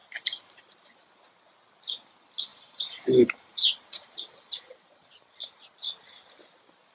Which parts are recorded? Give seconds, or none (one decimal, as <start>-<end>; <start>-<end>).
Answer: 1.1-2.5; 5.1-6.9